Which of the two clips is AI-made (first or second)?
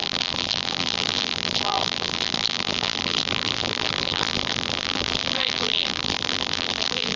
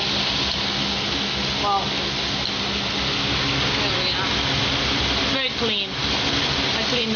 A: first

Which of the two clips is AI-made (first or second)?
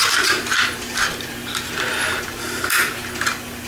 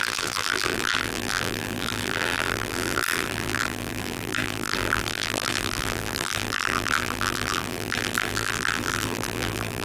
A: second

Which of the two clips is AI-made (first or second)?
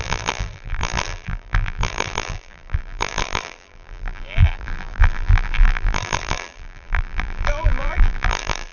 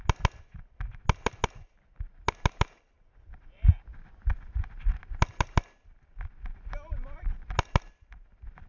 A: first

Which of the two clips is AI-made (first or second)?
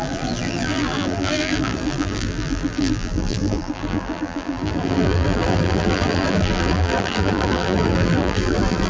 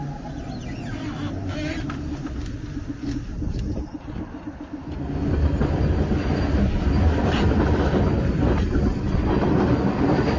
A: first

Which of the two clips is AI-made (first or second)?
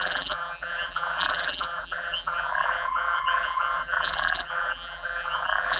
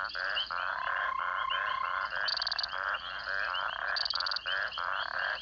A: first